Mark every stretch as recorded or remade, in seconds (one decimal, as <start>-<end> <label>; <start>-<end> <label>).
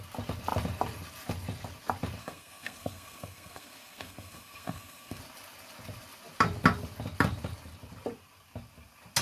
0.0-2.2 recorded; 2.2-5.2 remade; 5.2-9.2 recorded